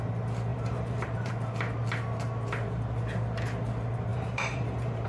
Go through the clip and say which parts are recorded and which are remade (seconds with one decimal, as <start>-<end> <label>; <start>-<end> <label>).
0.0-0.5 recorded; 0.5-1.3 remade; 1.3-4.1 recorded; 4.1-5.1 remade